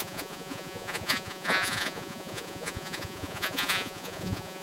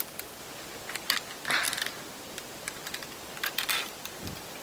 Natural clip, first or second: second